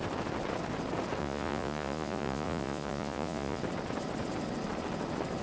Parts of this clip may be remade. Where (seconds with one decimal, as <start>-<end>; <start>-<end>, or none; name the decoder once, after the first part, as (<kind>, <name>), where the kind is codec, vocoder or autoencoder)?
1.2-3.6 (vocoder, Vocos)